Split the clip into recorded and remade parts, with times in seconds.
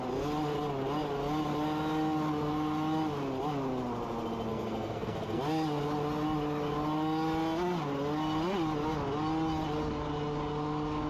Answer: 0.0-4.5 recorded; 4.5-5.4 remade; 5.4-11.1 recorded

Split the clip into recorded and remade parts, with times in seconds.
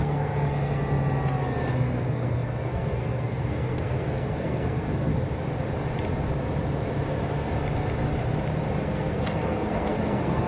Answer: 0.0-0.8 remade; 0.8-1.7 recorded; 1.7-5.1 remade; 5.1-8.8 recorded; 8.8-10.5 remade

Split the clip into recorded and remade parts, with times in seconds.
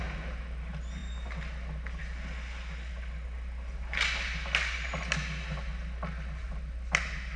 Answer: 0.0-7.4 recorded